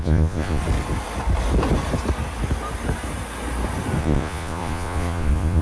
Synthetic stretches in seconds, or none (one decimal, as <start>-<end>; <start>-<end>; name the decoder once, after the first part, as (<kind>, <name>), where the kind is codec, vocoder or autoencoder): 0.0-0.6 (vocoder, Vocos); 4.0-5.6